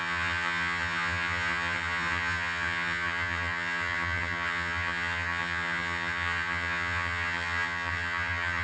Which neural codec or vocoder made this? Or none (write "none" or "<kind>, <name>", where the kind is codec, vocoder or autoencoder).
vocoder, HiFi-GAN